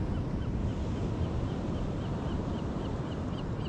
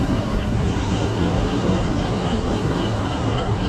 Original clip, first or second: first